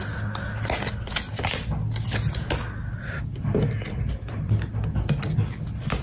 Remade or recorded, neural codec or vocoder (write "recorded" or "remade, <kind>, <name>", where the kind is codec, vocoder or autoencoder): recorded